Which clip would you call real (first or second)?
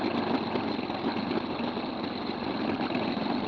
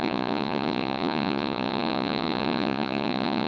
first